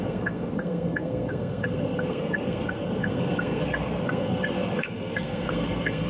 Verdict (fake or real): fake